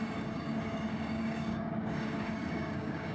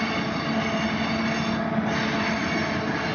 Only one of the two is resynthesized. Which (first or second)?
first